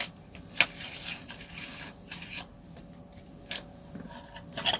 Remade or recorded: recorded